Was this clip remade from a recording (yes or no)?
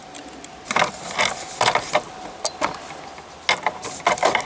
no